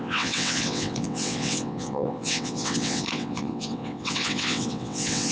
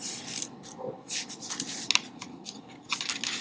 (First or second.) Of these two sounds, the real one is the second